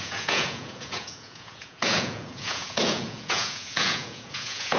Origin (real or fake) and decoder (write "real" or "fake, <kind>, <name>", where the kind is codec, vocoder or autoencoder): fake, vocoder, Vocos